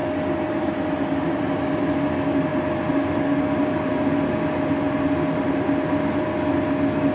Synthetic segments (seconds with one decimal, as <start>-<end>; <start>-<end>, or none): none